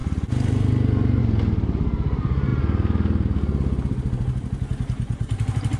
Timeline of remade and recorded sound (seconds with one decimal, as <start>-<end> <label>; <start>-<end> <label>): 0.0-5.8 recorded